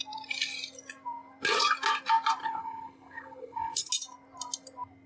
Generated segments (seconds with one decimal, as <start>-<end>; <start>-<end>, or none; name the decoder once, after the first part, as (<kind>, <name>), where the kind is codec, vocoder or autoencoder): 2.4-3.9 (codec, HILCodec)